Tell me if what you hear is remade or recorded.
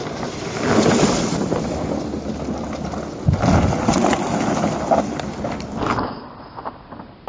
recorded